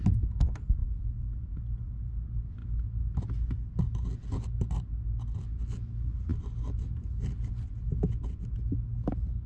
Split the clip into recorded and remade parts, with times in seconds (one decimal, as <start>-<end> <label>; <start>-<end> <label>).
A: 0.0-0.8 recorded; 0.8-1.5 remade; 1.5-9.5 recorded